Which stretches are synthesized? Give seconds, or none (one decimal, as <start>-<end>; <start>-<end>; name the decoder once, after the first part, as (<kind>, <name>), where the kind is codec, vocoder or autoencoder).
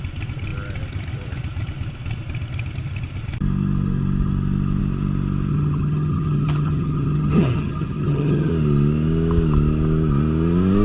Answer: 5.5-8.5 (vocoder, HiFi-GAN)